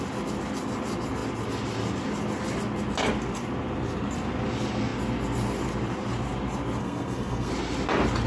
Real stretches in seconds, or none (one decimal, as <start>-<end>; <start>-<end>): 0.0-6.8; 7.5-8.3